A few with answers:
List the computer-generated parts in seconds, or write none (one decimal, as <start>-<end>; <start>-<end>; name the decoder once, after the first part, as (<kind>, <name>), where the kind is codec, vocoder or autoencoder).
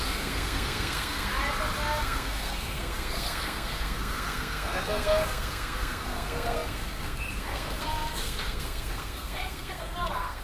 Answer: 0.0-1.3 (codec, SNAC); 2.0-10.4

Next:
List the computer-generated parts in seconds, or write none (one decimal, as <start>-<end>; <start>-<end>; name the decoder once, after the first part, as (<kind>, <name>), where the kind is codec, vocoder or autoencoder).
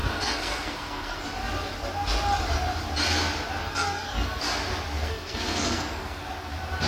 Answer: 0.0-1.2 (codec, SNAC); 3.6-4.4; 5.0-6.3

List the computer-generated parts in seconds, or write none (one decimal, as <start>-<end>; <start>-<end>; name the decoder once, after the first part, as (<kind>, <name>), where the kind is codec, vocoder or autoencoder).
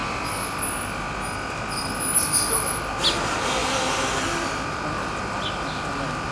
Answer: none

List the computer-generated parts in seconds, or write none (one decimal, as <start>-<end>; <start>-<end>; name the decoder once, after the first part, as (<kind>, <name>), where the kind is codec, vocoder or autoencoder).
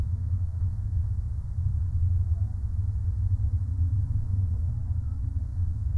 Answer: 0.0-1.0 (codec, SNAC); 4.2-4.7; 5.4-6.0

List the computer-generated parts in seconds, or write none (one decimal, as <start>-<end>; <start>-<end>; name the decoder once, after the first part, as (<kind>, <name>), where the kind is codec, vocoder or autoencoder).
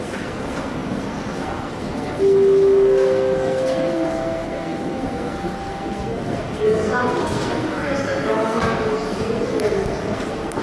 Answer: 0.0-10.6 (codec, SNAC)